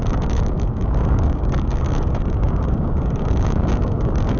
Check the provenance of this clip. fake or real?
fake